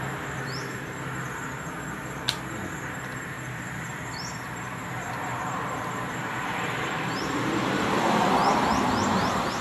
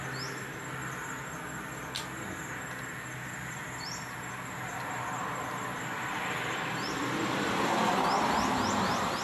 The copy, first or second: first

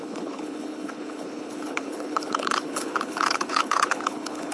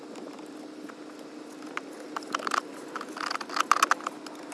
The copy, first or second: first